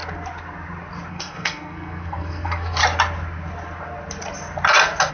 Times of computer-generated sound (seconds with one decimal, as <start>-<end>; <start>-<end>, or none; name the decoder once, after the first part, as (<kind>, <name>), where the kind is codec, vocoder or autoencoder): 1.1-2.8 (codec, SNAC)